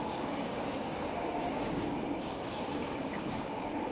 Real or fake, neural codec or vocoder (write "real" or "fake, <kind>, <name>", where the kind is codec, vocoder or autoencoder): fake, codec, DAC